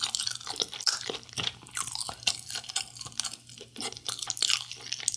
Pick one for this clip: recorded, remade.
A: recorded